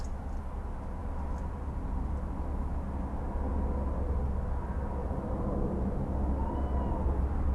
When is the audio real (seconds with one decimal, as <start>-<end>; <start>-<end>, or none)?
0.0-7.5